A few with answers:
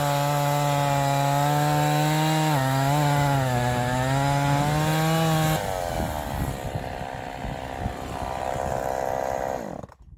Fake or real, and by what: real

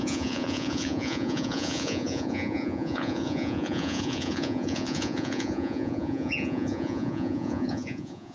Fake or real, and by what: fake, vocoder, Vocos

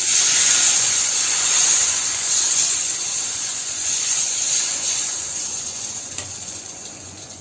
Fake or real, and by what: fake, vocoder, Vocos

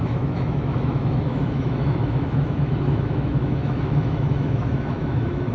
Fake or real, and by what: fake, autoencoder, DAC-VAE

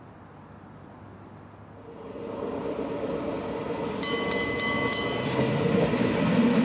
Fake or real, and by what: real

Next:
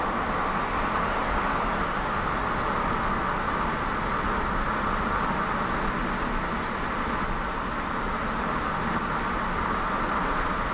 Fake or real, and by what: real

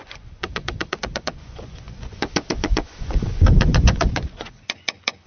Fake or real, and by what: fake, vocoder, Vocos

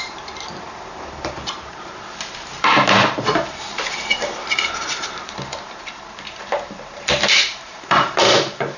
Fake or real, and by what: fake, vocoder, BigVGAN v2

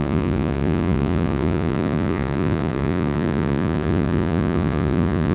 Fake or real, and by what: fake, vocoder, Vocos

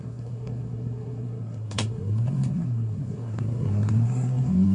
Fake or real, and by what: fake, codec, SNAC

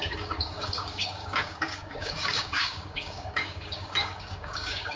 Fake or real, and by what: fake, codec, DAC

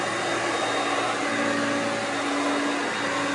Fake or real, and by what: real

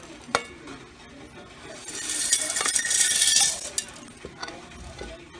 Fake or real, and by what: real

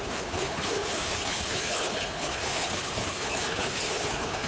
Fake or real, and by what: fake, codec, HILCodec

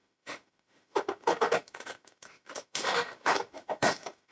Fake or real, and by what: fake, autoencoder, DAC-VAE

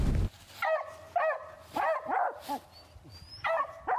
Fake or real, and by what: real